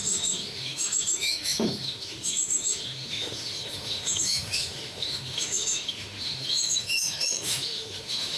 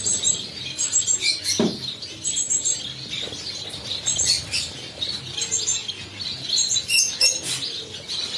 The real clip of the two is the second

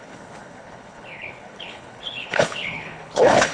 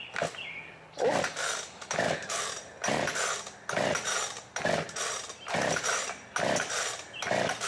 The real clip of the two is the second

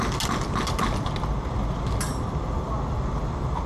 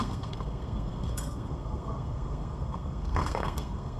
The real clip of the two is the first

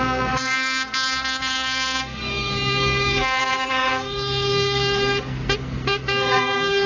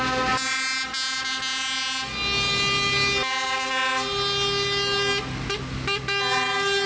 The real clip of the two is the second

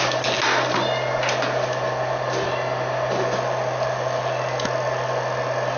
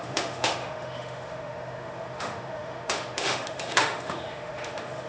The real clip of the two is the first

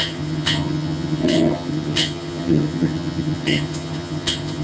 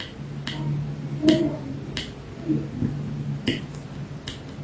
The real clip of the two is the second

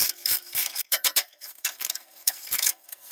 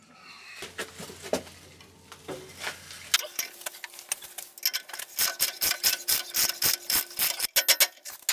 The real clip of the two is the second